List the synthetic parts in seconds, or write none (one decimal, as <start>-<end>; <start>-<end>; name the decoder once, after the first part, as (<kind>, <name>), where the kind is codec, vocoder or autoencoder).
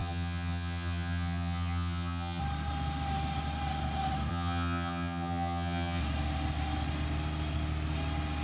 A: 0.0-2.4 (vocoder, HiFi-GAN); 4.3-6.0